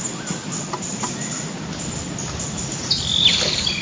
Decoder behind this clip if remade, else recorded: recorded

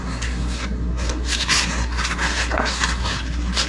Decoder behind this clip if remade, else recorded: remade, codec, SNAC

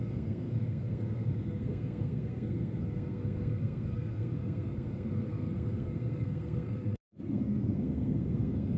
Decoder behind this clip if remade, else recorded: remade, codec, SNAC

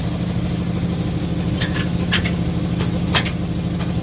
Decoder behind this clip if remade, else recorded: recorded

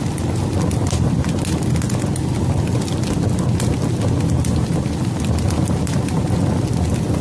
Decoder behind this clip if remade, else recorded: recorded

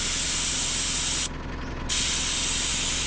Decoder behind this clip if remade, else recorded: recorded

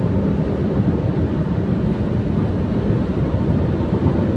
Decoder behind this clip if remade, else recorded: recorded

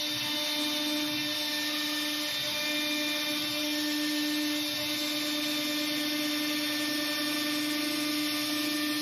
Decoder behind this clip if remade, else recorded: recorded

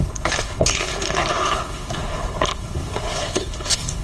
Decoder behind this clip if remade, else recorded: remade, codec, HILCodec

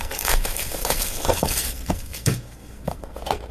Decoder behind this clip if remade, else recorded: remade, codec, SNAC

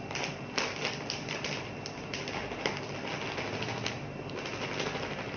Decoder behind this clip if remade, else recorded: recorded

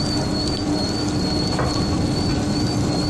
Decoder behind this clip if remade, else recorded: recorded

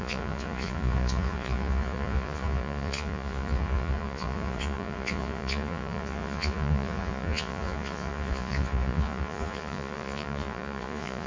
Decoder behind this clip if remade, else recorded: remade, vocoder, Vocos